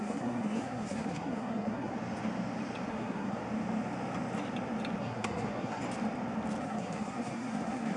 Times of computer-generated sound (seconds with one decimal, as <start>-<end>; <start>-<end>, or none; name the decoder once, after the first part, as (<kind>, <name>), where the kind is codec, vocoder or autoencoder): 0.0-1.9 (codec, SNAC); 2.9-3.4; 5.0-5.8; 6.6-8.0